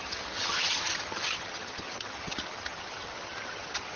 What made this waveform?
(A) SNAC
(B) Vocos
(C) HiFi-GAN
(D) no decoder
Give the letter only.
C